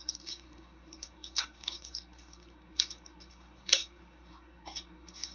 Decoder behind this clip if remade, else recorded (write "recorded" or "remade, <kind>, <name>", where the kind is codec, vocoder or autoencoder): remade, codec, SNAC